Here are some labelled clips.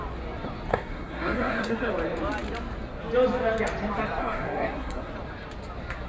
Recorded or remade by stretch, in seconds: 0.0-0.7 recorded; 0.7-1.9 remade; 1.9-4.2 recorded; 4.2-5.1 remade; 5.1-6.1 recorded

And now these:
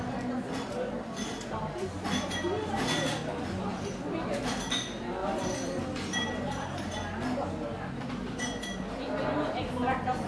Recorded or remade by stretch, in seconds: 0.0-10.3 recorded

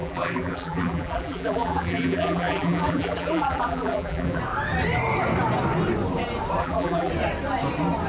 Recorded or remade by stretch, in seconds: 0.0-4.4 remade; 4.4-6.6 recorded; 6.6-7.1 remade; 7.1-8.1 recorded